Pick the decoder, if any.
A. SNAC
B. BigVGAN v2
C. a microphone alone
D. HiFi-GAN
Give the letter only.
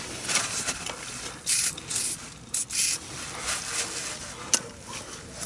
C